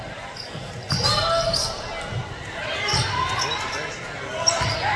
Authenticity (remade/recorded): recorded